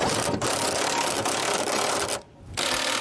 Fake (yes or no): no